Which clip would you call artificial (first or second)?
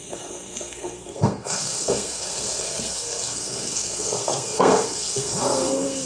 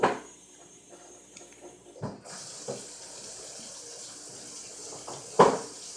first